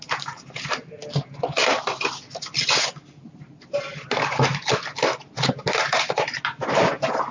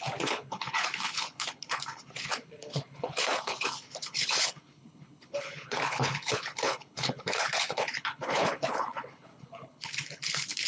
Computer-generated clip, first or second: second